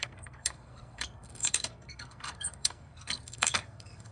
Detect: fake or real fake